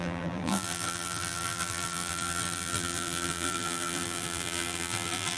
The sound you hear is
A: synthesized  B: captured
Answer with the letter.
A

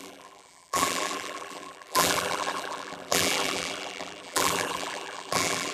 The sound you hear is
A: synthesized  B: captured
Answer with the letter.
A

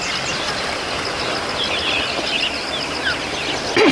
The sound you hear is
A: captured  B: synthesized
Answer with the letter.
A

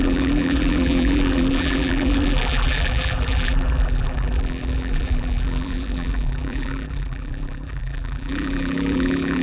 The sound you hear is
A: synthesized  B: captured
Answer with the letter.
A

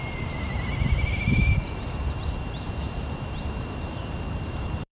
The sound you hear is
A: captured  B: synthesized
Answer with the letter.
B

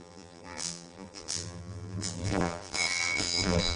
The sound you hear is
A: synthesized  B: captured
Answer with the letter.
A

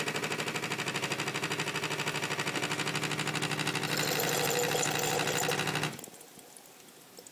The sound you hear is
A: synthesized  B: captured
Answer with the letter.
B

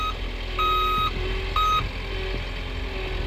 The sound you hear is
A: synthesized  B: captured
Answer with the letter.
B